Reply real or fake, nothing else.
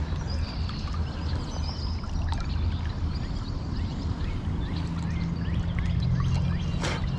real